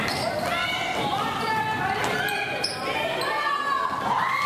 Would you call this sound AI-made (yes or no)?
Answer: no